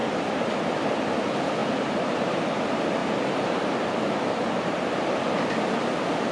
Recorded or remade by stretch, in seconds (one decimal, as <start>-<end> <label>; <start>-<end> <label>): 0.0-0.6 remade; 0.6-1.6 recorded; 1.6-2.4 remade; 2.4-3.0 recorded; 3.0-5.1 remade; 5.1-6.3 recorded